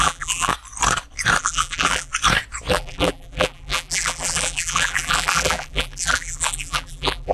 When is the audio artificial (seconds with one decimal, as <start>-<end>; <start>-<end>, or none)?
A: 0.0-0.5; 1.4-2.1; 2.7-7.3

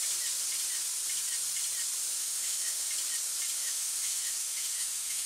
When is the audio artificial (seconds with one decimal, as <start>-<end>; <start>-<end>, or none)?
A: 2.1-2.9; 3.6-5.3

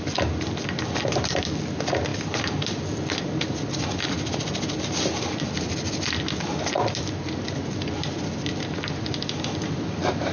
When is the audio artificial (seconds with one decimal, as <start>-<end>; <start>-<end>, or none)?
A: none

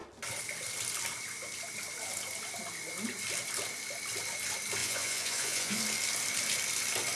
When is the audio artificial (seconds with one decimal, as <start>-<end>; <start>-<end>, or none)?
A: 4.8-5.8

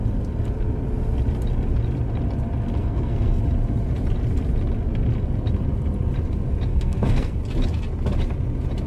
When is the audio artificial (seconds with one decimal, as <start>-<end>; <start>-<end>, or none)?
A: 2.8-3.4; 6.7-7.4